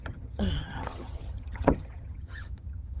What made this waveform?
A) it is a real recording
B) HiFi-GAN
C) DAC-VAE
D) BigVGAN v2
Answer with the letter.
B